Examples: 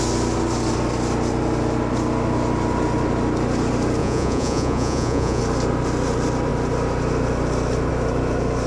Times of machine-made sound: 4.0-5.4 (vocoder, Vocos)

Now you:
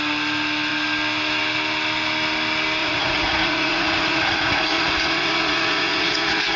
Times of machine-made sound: 2.8-6.6 (vocoder, Vocos)

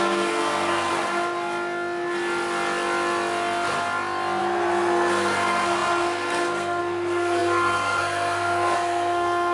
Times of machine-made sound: 0.0-0.9 (codec, SNAC); 4.4-9.5

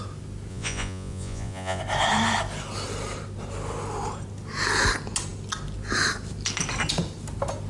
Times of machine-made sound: 0.5-1.8 (vocoder, Vocos)

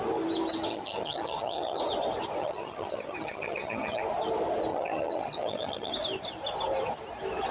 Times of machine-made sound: 0.7-1.8 (vocoder, HiFi-GAN); 2.4-4.0; 4.7-5.9

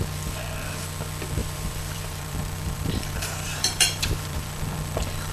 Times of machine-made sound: 1.4-4.6 (vocoder, BigVGAN v2)